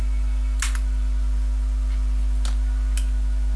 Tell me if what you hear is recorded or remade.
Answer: recorded